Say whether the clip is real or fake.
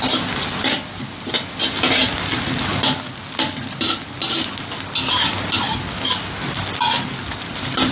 real